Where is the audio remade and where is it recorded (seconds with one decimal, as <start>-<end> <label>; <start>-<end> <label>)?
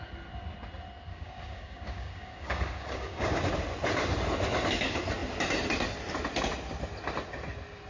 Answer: 0.0-1.1 recorded; 1.1-3.5 remade; 3.5-7.9 recorded